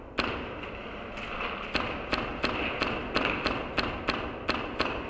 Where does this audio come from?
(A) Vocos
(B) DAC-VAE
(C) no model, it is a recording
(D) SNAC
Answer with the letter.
C